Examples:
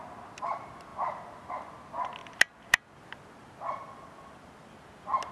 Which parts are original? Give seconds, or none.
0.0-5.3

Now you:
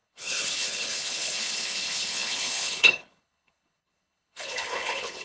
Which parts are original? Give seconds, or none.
none